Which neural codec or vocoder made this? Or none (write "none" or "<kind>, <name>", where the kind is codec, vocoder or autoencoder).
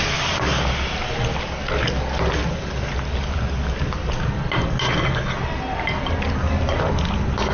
none